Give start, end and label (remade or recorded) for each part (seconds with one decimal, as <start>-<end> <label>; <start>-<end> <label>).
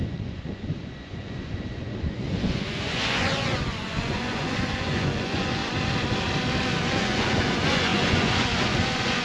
0.0-5.6 remade; 5.6-6.8 recorded; 6.8-9.2 remade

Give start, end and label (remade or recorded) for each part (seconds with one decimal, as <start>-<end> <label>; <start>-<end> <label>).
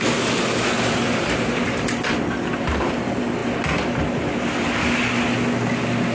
0.0-1.2 recorded; 1.2-1.9 remade; 1.9-6.1 recorded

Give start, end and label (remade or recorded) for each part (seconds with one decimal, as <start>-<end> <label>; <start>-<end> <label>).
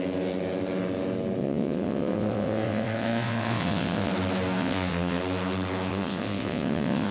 0.0-1.4 recorded; 1.4-4.1 remade; 4.1-4.6 recorded; 4.6-5.2 remade; 5.2-5.9 recorded; 5.9-7.1 remade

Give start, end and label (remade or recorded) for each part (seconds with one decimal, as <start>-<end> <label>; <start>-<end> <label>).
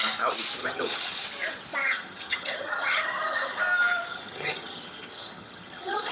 0.0-0.6 recorded; 0.6-1.2 remade; 1.2-1.8 recorded; 1.8-3.6 remade; 3.6-4.1 recorded; 4.1-6.1 remade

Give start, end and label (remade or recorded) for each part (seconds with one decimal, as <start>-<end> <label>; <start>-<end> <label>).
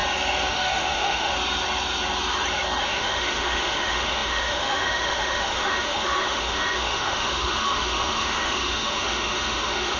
0.0-0.5 recorded; 0.5-1.3 remade; 1.3-2.8 recorded; 2.8-10.0 remade